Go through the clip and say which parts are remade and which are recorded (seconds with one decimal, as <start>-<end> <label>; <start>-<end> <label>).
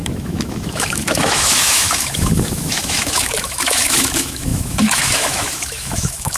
0.0-6.4 remade